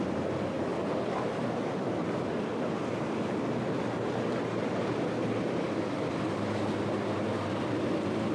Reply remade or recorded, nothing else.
recorded